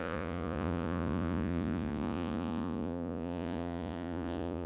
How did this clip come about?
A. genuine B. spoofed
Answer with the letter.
B